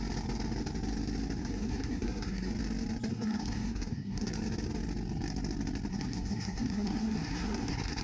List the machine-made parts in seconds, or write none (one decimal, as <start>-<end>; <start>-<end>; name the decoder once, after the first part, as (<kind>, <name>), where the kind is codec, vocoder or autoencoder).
1.4-2.5 (codec, SNAC); 3.1-4.3; 5.9-8.0